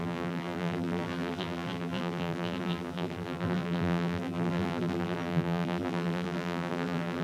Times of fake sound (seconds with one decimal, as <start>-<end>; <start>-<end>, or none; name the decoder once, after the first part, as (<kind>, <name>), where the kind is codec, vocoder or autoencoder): 0.0-7.2 (vocoder, BigVGAN v2)